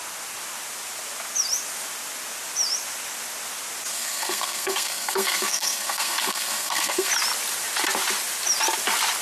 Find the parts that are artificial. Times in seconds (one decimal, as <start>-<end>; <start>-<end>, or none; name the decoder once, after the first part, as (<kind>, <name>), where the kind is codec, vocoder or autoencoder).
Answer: 3.9-7.1 (codec, SNAC)